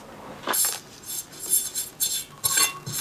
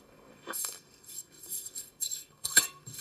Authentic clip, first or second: first